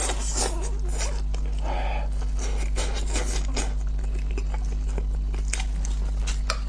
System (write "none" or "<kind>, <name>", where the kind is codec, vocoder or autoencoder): none